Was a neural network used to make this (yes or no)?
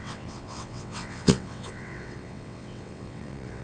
yes